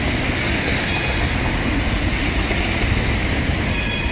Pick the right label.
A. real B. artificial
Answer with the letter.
A